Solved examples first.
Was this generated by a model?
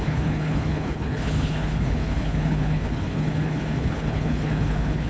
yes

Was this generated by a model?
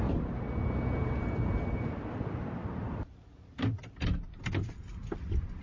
no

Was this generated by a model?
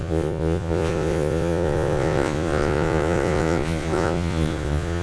yes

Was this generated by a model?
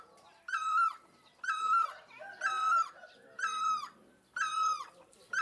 yes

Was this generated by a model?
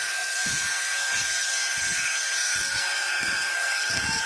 yes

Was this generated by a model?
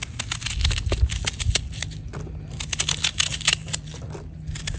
no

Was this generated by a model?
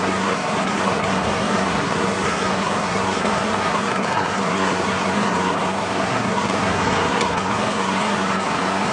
yes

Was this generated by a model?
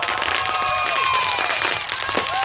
yes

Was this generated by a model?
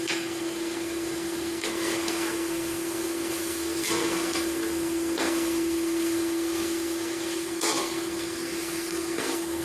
yes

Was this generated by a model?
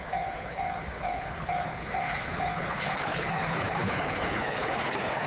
yes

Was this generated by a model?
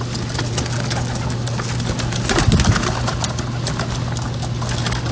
no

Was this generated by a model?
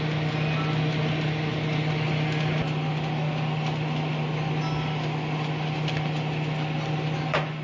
no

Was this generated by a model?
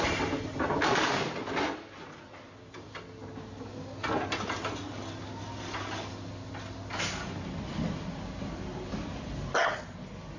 no